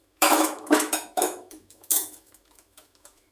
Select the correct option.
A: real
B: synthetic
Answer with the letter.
B